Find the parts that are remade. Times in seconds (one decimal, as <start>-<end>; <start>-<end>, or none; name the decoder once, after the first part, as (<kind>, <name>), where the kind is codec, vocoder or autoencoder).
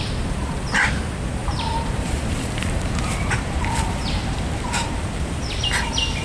1.4-5.1 (vocoder, BigVGAN v2)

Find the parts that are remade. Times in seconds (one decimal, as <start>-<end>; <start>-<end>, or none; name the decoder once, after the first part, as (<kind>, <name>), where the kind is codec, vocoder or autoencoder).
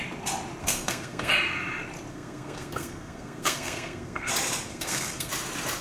0.6-1.3 (codec, SNAC); 2.1-4.3; 4.7-5.3